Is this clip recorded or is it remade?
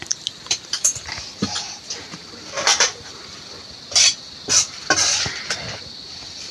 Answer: remade